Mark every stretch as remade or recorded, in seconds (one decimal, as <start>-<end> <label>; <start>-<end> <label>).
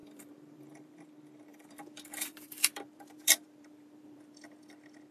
0.0-1.0 remade; 1.0-1.5 recorded; 1.5-4.6 remade; 4.6-5.1 recorded